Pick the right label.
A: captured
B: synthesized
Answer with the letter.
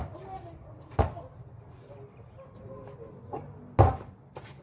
A